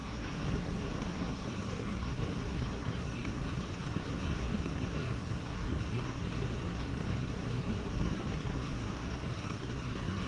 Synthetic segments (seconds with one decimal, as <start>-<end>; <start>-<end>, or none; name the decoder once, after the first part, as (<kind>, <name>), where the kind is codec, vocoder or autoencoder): 0.0-10.3 (codec, SNAC)